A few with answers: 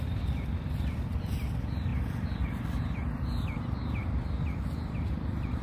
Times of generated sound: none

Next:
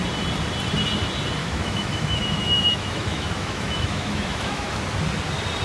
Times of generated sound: 1.4-4.8 (autoencoder, DAC-VAE)

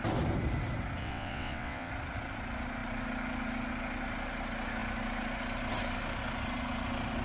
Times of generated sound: 1.0-1.9 (vocoder, WaveNeXt)

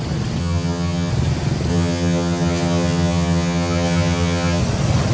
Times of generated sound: 0.4-1.1 (vocoder, HiFi-GAN); 1.7-4.6